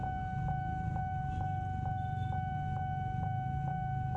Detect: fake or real real